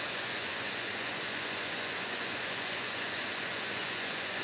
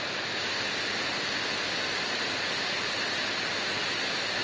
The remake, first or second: first